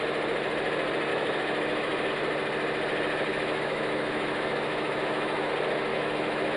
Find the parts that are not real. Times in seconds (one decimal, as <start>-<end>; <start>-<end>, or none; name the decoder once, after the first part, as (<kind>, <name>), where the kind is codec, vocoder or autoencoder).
1.1-2.1 (autoencoder, DAC-VAE); 3.3-5.5; 5.9-6.6